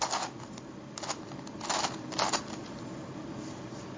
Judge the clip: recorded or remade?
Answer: recorded